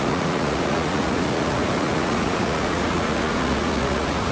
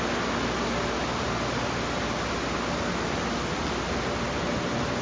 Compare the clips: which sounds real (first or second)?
second